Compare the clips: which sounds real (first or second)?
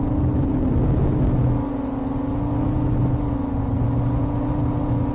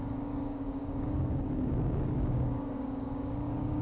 first